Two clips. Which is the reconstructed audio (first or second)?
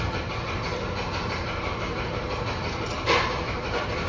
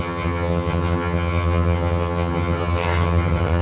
second